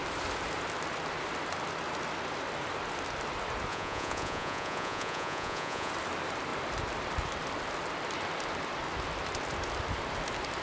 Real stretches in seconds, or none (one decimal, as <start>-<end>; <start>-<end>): 0.0-3.7; 5.9-10.6